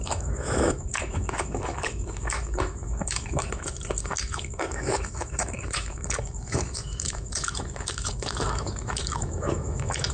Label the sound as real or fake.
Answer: fake